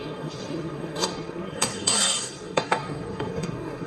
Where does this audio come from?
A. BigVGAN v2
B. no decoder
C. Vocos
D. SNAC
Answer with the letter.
D